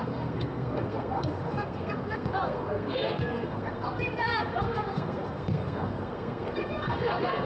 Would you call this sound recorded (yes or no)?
no